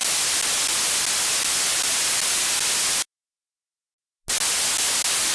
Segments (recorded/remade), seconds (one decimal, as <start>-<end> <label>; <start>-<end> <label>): 0.0-5.3 recorded